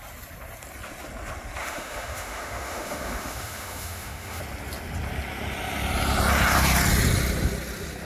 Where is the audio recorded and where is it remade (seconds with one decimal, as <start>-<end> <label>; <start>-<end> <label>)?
0.0-1.6 recorded; 1.6-4.4 remade; 4.4-8.0 recorded